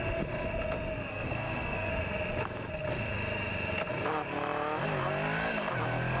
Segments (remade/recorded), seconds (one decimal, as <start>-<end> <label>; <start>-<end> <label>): 0.0-1.1 recorded; 1.1-1.9 remade; 1.9-6.2 recorded